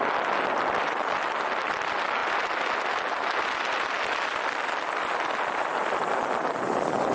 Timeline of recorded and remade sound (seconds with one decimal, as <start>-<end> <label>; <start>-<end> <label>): 0.0-7.1 recorded